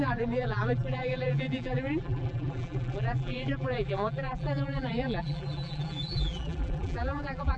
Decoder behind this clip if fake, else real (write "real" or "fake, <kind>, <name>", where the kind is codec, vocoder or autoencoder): fake, vocoder, BigVGAN v2